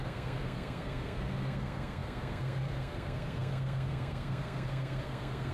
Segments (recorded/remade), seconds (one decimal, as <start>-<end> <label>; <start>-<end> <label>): 0.0-5.5 remade